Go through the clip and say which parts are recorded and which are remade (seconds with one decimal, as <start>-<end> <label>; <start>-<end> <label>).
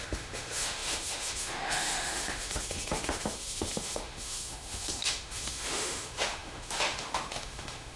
0.0-8.0 remade